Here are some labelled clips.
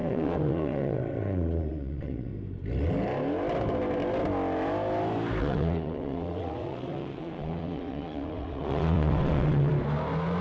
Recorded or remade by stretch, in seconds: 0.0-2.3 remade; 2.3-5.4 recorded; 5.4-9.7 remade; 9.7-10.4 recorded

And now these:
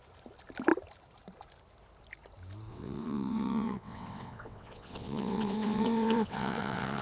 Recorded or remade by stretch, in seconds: 0.0-2.7 recorded; 2.7-7.0 remade

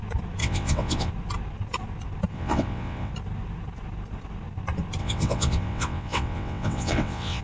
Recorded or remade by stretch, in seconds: 0.0-0.4 recorded; 0.4-1.1 remade; 1.1-2.3 recorded; 2.3-3.1 remade; 3.1-5.0 recorded; 5.0-7.4 remade